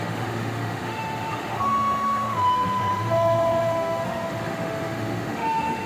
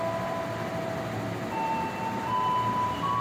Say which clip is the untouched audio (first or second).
second